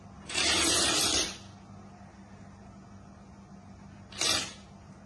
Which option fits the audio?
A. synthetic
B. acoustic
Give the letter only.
B